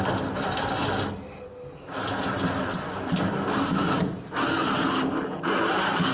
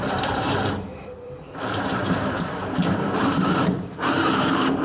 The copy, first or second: second